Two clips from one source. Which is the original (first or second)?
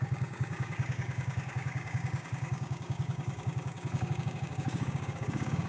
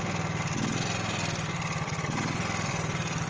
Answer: second